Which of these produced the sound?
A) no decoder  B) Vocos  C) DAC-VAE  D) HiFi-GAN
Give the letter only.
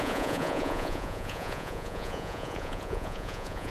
B